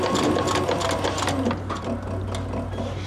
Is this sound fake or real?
real